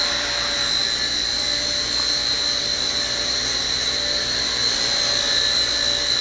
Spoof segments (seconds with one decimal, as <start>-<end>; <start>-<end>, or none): none